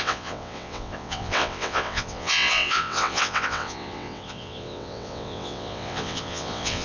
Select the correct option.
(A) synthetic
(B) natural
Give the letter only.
A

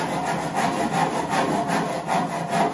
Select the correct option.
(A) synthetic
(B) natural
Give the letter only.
B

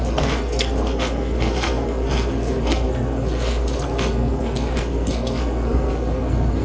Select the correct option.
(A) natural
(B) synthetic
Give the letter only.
B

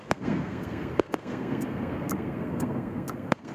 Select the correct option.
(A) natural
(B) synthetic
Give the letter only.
B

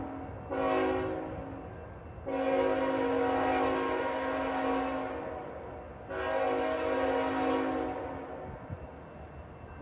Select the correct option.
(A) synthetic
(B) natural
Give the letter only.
B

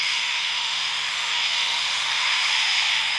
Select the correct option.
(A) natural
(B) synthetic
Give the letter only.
B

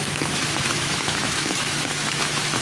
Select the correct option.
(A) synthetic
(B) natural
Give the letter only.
A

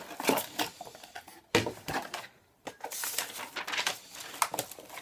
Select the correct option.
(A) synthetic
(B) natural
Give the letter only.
B